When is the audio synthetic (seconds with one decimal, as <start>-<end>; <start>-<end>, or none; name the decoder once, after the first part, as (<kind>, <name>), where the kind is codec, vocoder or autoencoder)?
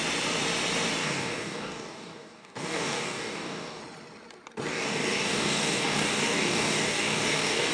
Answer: 1.0-3.8 (codec, DAC); 4.7-7.7